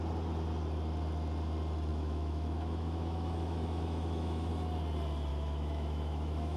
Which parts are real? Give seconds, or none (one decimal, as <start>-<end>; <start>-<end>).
0.0-1.9; 4.5-5.3